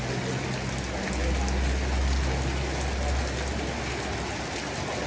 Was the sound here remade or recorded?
recorded